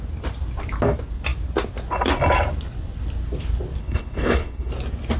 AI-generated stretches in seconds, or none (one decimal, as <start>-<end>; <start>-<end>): 3.8-4.7